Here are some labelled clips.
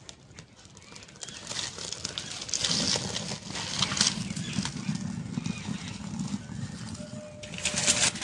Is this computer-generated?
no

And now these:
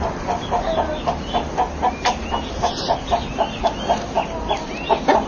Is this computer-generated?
no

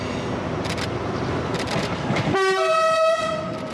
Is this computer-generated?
no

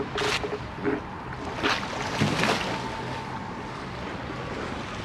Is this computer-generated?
no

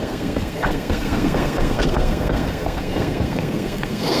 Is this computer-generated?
yes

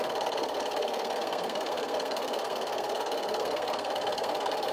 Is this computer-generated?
yes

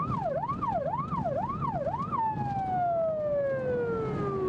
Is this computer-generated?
no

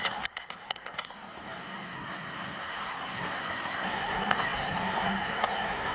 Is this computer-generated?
yes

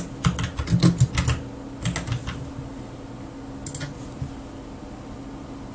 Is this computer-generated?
no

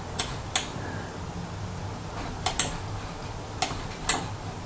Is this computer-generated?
no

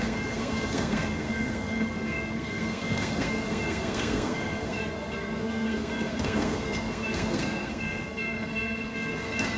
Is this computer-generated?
yes